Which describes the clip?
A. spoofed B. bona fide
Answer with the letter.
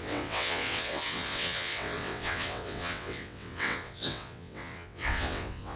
A